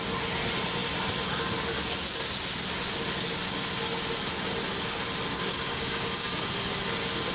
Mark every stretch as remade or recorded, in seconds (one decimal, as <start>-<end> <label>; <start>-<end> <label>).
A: 0.0-5.3 recorded; 5.3-6.4 remade; 6.4-7.3 recorded